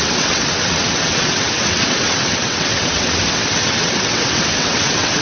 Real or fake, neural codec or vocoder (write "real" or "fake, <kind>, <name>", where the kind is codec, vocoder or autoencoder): fake, vocoder, WaveNeXt